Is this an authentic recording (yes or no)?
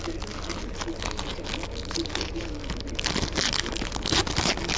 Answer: yes